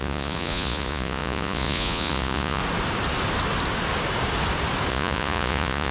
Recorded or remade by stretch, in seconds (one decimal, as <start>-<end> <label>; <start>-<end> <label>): 0.0-2.6 remade; 2.6-4.9 recorded; 4.9-5.9 remade